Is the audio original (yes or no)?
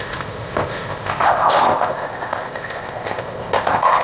no